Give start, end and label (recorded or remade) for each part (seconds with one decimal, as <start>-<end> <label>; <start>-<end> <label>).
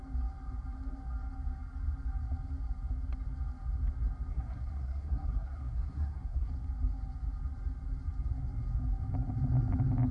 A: 0.0-4.3 recorded; 4.3-6.5 remade; 6.5-10.1 recorded